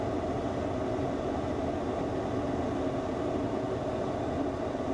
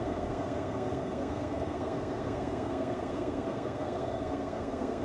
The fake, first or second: second